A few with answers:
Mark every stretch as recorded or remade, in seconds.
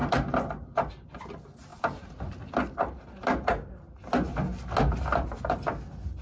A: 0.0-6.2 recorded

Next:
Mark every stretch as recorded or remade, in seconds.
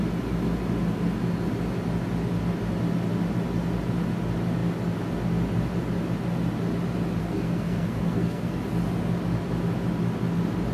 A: 0.0-7.2 recorded; 7.2-8.6 remade; 8.6-10.7 recorded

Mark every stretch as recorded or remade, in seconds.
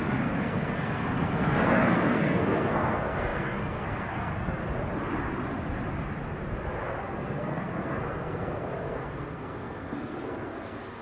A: 0.0-4.6 remade; 4.6-7.0 recorded; 7.0-11.0 remade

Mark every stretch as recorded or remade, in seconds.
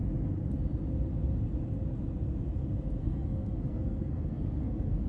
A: 0.0-3.0 recorded; 3.0-5.1 remade